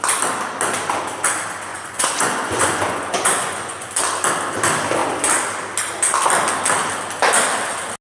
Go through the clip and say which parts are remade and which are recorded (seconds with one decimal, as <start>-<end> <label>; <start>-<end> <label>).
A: 0.0-1.7 recorded; 1.7-3.9 remade; 3.9-8.0 recorded